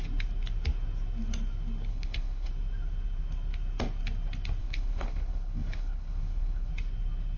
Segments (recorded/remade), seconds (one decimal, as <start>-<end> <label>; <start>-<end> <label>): 0.0-1.9 recorded; 1.9-2.5 remade; 2.5-4.6 recorded; 4.6-6.7 remade; 6.7-7.4 recorded